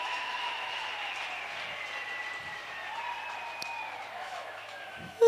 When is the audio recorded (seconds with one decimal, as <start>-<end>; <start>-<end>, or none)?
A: 0.9-4.1